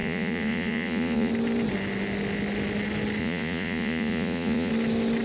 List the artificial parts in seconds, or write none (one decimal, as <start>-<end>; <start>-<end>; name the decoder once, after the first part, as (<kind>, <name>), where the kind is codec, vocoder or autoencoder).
0.0-1.3 (vocoder, Vocos); 3.2-4.7

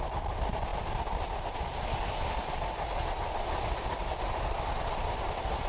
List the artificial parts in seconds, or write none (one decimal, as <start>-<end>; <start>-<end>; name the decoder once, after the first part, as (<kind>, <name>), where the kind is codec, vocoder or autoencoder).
none

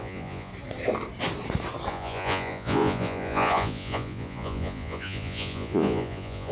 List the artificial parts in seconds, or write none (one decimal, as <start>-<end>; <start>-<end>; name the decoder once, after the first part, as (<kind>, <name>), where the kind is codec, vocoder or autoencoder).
0.0-0.5 (vocoder, Vocos); 1.9-6.5

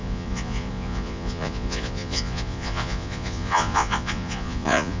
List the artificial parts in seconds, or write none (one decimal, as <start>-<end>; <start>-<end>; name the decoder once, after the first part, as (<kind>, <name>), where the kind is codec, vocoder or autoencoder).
0.0-5.0 (vocoder, Vocos)

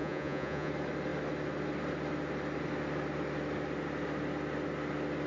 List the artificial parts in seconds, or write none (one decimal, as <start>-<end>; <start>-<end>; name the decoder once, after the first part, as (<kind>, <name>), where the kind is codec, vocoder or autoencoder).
0.0-0.7 (vocoder, Vocos)

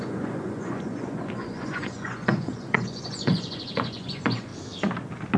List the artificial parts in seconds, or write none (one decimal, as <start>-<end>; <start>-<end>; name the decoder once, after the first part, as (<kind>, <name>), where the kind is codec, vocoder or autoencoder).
0.0-4.5 (vocoder, Vocos)

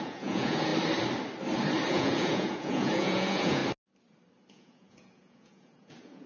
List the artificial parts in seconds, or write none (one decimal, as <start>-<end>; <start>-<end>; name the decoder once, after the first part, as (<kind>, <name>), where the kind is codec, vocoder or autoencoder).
0.0-0.7 (vocoder, Vocos); 1.9-3.6; 4.5-6.3

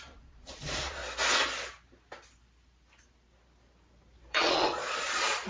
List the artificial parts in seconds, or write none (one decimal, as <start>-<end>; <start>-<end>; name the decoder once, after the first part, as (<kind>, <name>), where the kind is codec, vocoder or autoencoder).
0.0-1.0 (vocoder, Vocos); 4.3-5.5